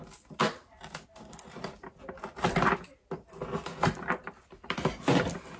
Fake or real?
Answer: real